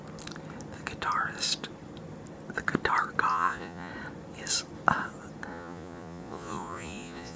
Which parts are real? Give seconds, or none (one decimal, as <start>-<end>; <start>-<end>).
0.0-3.3; 3.9-5.5